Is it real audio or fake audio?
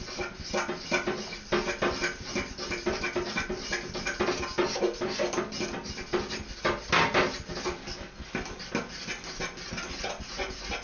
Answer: real